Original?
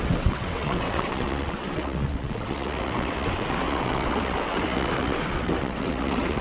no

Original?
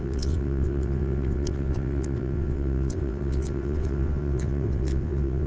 no